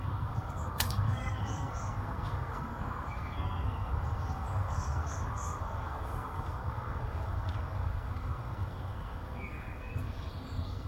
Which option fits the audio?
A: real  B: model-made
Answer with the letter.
B